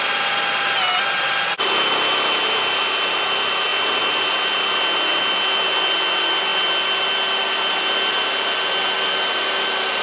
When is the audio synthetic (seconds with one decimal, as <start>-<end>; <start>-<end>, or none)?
none